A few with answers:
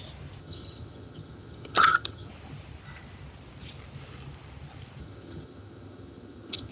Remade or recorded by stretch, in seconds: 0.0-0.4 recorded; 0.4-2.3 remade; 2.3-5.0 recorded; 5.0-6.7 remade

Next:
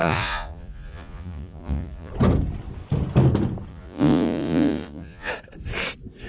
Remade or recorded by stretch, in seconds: 0.0-2.1 remade; 2.1-3.7 recorded; 3.7-5.3 remade; 5.3-6.3 recorded

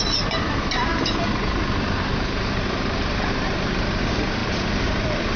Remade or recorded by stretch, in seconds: 0.0-5.4 remade

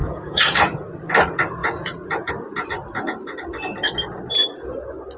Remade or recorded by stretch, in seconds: 0.0-0.6 remade; 0.6-1.6 recorded; 1.6-2.3 remade; 2.3-5.2 recorded

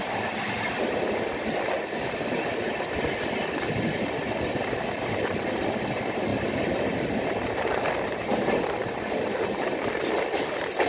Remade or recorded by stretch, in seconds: 0.0-10.9 recorded

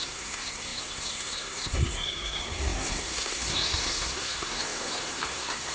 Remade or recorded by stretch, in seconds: 0.0-5.7 remade